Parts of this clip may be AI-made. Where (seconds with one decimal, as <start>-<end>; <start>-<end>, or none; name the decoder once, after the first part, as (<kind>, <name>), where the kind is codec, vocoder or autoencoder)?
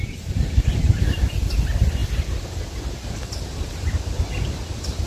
none